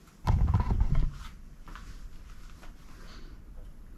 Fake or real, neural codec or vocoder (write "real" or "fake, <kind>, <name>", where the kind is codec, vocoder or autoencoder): real